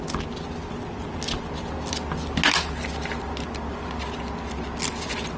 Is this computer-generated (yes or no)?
no